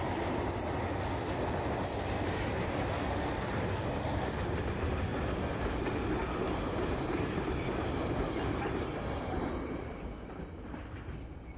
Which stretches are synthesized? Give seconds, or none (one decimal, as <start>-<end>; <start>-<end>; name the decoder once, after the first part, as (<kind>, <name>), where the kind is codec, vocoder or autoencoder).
none